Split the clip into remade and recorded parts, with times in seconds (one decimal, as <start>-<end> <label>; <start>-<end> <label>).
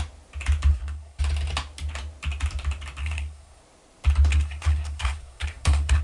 0.0-0.7 recorded; 0.7-1.2 remade; 1.2-3.0 recorded; 3.0-3.6 remade; 3.6-4.3 recorded; 4.3-6.0 remade